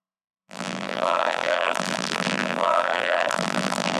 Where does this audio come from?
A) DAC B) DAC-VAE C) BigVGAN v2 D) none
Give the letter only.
C